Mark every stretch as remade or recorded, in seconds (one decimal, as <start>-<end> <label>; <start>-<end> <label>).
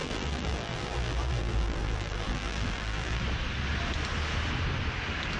0.0-3.2 remade; 3.2-5.4 recorded